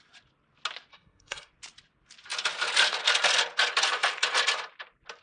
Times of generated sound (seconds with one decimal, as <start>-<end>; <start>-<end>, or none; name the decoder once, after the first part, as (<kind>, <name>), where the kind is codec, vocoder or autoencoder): 0.9-1.5 (codec, SNAC)